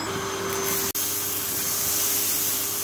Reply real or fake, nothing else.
real